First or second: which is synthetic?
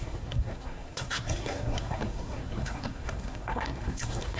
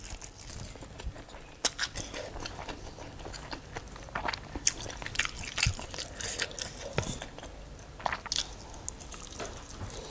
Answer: first